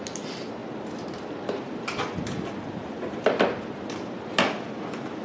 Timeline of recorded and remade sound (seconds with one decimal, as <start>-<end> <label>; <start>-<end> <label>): 0.0-5.2 recorded